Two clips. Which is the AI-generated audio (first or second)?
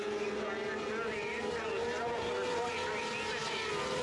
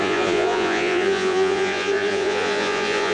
second